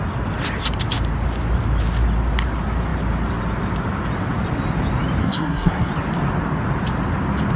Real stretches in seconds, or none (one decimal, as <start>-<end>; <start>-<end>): 0.0-5.2; 5.9-7.6